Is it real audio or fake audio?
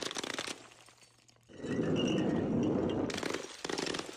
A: real